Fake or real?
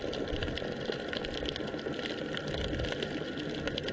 real